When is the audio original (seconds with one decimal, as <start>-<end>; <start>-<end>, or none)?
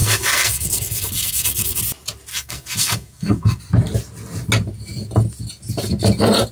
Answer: 1.8-2.3; 3.6-6.5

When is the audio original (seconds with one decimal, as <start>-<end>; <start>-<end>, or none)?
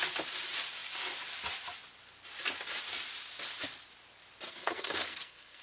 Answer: 0.0-4.5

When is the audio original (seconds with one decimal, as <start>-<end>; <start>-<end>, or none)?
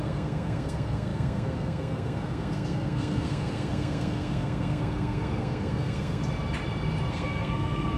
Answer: 6.2-7.1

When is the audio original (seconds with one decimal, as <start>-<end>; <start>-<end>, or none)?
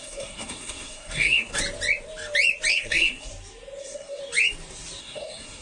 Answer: 1.5-2.7; 3.3-3.8; 4.2-5.0